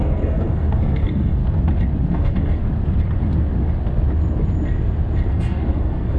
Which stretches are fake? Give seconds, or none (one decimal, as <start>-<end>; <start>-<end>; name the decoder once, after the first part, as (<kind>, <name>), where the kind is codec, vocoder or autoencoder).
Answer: 0.0-1.4 (codec, SNAC); 2.1-2.6; 5.3-6.2